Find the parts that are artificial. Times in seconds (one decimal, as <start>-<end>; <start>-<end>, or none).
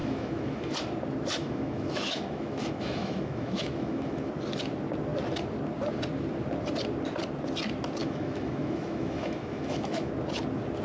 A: 0.0-0.7; 1.4-4.3; 8.0-10.1